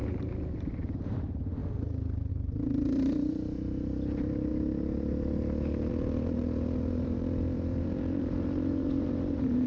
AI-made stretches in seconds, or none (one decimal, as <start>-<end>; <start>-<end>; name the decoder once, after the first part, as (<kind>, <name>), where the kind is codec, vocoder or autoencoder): 0.0-1.6 (vocoder, BigVGAN v2); 2.3-4.5; 5.9-9.7